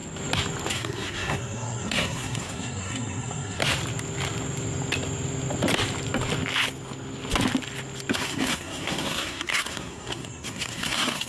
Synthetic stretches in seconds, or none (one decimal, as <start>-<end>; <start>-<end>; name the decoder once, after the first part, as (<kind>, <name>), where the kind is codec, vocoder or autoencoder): 0.7-3.6 (codec, SNAC); 8.1-11.3

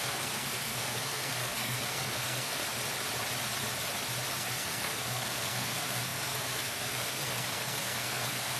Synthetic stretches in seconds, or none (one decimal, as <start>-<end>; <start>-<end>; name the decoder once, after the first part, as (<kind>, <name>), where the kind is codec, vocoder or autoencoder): 0.0-2.6 (codec, SNAC); 4.3-8.6

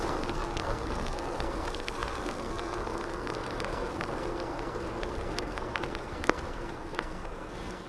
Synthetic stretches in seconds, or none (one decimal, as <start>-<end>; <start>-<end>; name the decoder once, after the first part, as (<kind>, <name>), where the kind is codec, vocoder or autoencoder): 0.0-7.9 (codec, SNAC)